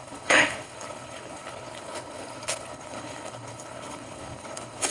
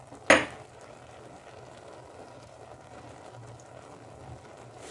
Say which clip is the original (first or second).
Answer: second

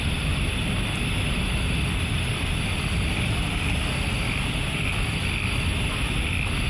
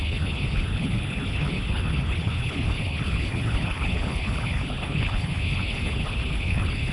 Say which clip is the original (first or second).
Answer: first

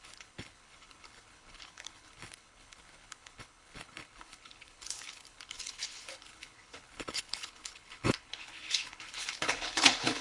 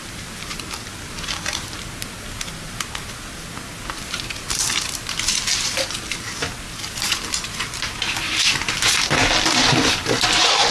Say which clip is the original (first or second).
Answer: second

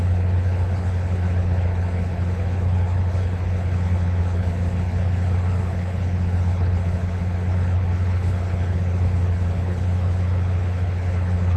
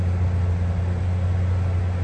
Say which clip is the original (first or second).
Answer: second